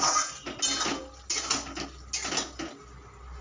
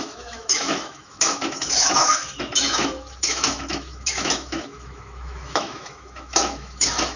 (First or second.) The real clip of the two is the first